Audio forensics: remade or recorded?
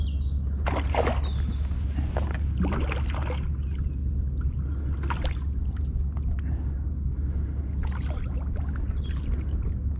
recorded